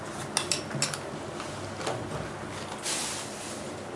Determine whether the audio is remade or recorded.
recorded